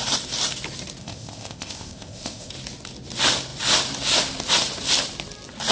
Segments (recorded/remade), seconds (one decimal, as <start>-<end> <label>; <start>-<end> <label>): 0.0-1.0 recorded; 1.0-2.5 remade; 2.5-5.7 recorded